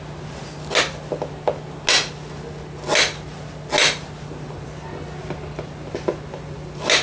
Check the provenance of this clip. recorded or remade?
recorded